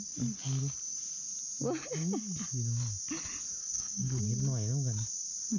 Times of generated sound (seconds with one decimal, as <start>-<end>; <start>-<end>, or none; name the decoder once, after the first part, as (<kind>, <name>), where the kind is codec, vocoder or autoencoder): 3.6-4.2 (codec, SNAC)